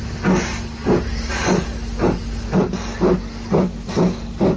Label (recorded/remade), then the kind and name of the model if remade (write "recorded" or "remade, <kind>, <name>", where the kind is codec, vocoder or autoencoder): recorded